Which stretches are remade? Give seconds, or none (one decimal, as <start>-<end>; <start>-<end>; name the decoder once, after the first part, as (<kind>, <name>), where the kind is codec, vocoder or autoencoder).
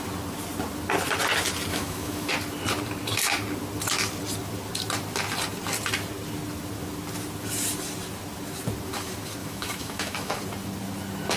1.7-2.3 (autoencoder, DAC-VAE); 9.4-10.4